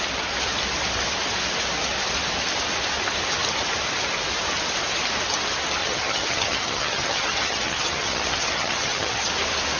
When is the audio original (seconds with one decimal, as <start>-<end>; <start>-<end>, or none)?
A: 0.0-5.8; 9.3-9.8